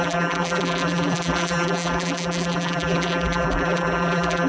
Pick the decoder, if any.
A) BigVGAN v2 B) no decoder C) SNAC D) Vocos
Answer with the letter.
A